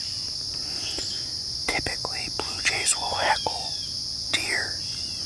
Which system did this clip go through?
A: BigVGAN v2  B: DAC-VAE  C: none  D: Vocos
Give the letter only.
D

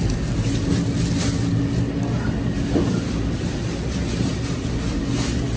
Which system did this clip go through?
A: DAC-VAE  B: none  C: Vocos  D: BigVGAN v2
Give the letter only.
B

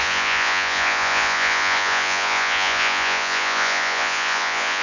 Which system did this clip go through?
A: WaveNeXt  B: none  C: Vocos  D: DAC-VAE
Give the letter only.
C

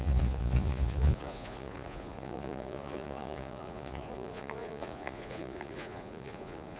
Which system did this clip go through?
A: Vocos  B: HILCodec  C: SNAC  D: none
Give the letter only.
A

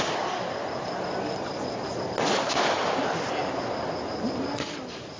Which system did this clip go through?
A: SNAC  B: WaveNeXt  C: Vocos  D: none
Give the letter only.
D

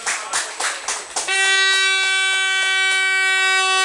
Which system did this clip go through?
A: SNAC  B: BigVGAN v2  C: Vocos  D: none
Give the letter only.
D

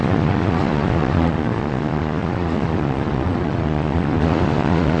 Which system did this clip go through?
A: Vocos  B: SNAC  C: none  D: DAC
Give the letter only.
A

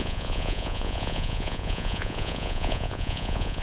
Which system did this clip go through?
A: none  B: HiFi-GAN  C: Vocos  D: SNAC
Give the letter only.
C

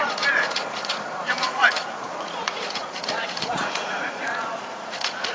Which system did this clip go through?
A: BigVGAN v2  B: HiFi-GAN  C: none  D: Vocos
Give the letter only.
D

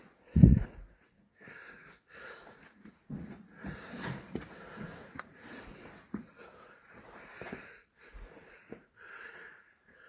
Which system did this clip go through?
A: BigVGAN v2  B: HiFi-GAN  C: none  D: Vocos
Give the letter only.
D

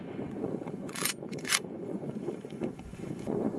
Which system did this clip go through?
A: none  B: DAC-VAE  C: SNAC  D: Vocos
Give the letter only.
D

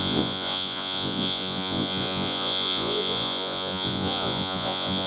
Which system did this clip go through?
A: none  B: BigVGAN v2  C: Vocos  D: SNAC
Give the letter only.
C